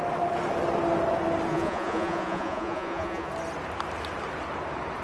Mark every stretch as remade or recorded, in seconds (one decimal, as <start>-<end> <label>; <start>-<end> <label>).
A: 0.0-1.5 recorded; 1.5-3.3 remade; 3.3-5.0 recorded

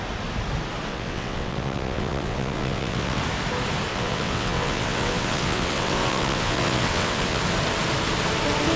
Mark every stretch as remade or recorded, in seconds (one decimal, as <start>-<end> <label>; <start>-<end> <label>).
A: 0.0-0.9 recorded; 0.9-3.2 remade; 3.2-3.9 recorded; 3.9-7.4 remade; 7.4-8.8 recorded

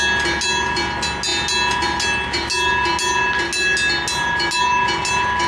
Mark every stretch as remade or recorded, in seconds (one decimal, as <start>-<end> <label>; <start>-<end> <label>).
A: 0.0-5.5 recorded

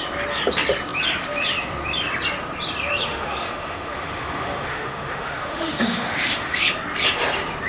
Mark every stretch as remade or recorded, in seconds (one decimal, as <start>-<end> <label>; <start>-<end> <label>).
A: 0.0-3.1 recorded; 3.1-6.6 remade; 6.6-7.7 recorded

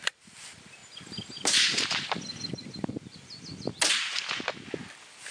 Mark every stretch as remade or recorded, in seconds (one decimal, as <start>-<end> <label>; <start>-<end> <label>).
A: 0.0-5.3 recorded